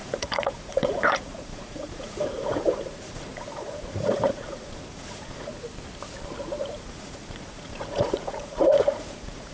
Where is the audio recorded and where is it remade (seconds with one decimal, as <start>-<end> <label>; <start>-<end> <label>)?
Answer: 0.0-5.5 remade; 5.5-6.8 recorded; 6.8-9.5 remade

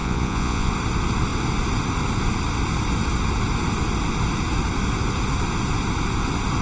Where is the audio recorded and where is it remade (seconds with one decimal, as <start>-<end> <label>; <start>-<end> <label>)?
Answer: 0.0-0.7 remade; 0.7-6.6 recorded

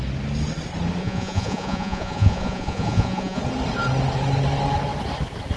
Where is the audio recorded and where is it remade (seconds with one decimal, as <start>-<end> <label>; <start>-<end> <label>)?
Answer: 0.0-1.0 recorded; 1.0-3.4 remade; 3.4-5.6 recorded

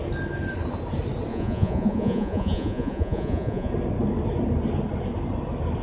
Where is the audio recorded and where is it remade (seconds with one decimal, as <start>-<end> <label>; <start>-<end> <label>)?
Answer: 0.0-1.3 recorded; 1.3-3.7 remade; 3.7-5.8 recorded